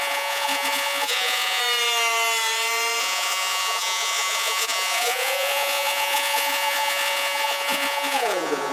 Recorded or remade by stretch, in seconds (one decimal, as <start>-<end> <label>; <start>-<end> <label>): 0.0-1.6 remade; 1.6-3.0 recorded; 3.0-8.7 remade